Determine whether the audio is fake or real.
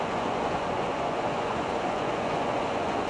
fake